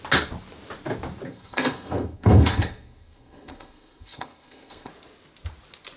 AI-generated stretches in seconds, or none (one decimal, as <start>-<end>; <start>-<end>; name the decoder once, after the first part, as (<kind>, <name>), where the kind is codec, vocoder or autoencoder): 1.3-4.9 (codec, SNAC)

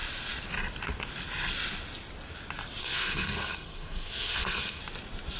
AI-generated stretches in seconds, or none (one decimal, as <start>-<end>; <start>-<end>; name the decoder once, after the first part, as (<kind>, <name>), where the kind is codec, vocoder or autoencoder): 2.8-4.8 (codec, SNAC)